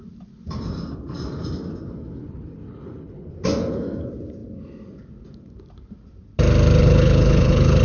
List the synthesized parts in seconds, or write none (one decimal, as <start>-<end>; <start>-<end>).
2.2-3.3; 6.8-7.8